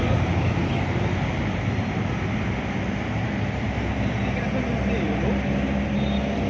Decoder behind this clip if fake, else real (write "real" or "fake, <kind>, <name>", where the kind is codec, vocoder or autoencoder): real